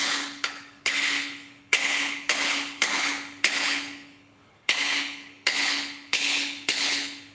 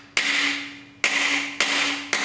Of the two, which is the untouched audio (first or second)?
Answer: second